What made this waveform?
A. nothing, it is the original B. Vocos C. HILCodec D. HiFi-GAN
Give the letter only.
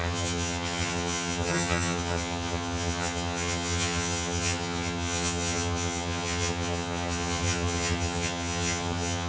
D